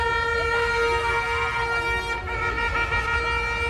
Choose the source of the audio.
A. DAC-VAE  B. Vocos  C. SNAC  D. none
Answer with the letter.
D